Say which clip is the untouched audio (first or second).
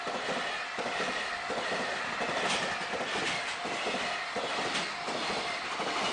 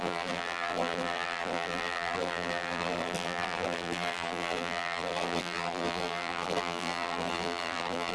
first